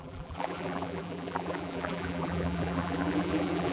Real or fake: fake